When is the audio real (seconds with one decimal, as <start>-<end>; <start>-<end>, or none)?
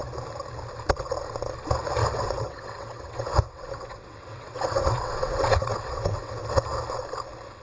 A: 0.0-2.0; 6.3-7.6